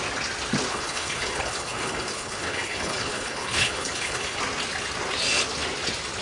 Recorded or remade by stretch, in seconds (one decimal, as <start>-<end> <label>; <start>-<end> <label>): 0.0-0.7 recorded; 0.7-4.4 remade; 4.4-6.2 recorded